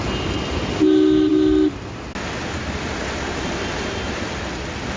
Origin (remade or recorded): recorded